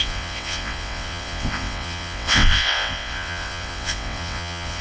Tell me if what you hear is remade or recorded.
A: remade